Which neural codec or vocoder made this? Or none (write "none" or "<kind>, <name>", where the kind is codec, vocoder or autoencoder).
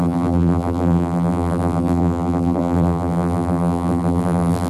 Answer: vocoder, BigVGAN v2